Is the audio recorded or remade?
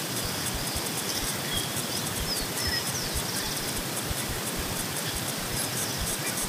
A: remade